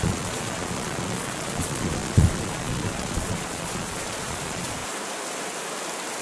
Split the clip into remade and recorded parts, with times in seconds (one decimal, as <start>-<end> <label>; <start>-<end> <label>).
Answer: 0.0-4.8 remade; 4.8-6.2 recorded